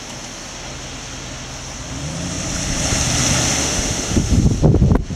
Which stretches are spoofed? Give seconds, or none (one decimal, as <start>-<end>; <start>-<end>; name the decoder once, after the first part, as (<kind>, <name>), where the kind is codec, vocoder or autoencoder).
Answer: 3.6-4.4 (autoencoder, DAC-VAE)